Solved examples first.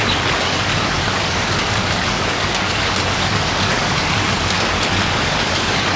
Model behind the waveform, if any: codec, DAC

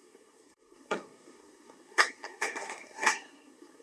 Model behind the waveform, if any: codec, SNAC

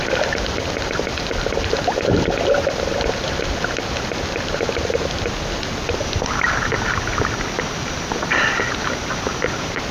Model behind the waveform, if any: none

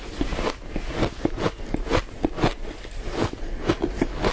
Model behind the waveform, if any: none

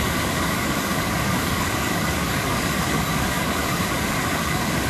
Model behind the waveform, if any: codec, DAC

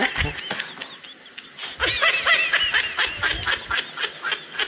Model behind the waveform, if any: none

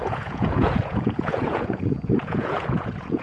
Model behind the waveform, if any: vocoder, Vocos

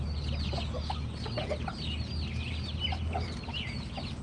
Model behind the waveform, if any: none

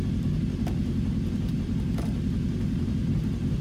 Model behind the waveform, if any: vocoder, BigVGAN v2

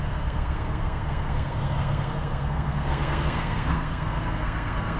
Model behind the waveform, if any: codec, SNAC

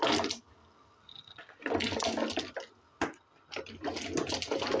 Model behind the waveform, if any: none